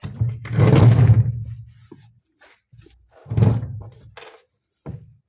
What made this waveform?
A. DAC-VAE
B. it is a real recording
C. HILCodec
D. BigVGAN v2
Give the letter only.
B